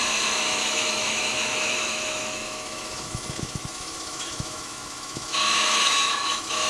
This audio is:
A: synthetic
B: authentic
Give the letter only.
A